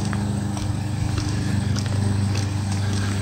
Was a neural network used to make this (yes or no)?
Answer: yes